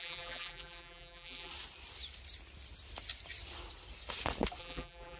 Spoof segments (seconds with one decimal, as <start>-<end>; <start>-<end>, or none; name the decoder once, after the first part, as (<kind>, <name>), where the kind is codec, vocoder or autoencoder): 0.0-1.5 (vocoder, BigVGAN v2); 4.6-5.2